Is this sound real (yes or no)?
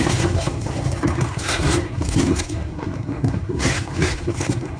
no